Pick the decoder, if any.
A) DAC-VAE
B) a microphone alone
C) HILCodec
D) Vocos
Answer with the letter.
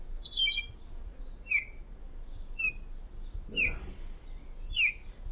B